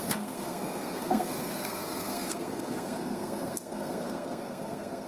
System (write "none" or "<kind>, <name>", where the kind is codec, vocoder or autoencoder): codec, SNAC